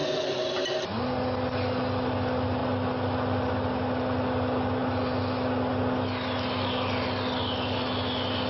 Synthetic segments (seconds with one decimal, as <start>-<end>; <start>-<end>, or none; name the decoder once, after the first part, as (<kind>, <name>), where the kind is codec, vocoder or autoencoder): none